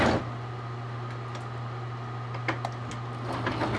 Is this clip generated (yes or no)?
no